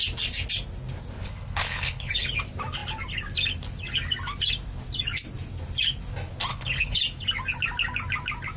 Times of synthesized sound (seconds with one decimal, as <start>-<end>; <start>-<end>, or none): 1.2-2.1; 6.5-7.0